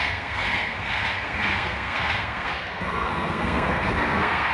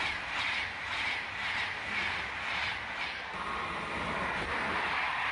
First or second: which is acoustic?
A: second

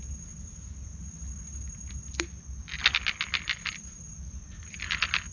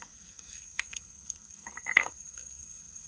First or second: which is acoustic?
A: first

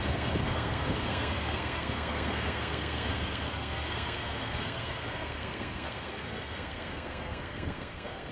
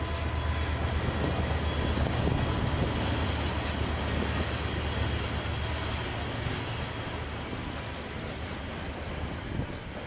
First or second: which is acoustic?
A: second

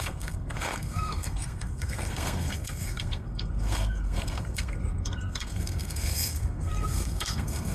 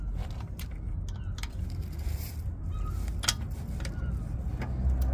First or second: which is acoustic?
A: second